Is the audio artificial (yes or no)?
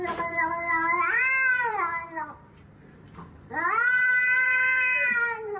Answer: yes